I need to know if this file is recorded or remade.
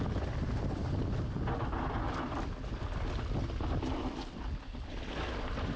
recorded